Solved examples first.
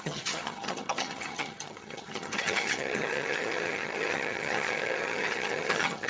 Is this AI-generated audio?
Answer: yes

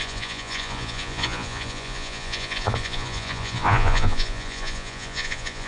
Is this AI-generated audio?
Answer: yes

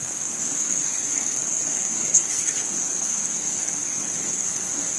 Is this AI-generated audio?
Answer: yes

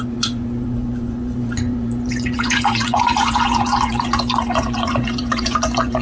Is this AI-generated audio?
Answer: yes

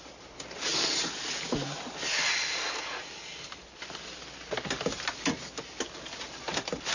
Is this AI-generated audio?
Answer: no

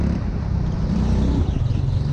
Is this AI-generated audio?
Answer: no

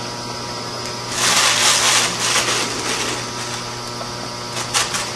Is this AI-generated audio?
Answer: no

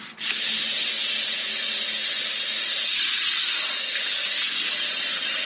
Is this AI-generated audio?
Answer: no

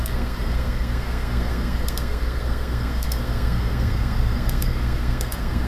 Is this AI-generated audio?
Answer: yes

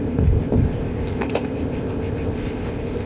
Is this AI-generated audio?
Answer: yes